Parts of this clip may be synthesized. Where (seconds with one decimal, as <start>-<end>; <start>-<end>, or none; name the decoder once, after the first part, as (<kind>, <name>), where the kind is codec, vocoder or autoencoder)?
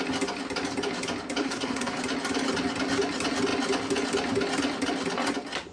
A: 1.4-2.0 (codec, SNAC)